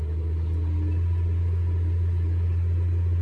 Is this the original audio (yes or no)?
yes